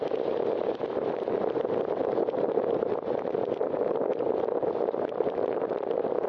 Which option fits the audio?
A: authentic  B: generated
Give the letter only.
A